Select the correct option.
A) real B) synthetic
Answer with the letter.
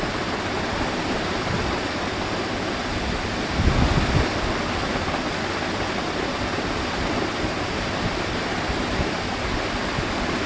A